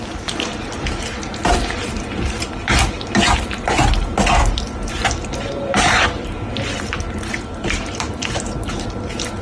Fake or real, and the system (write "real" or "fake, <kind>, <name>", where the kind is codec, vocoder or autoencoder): real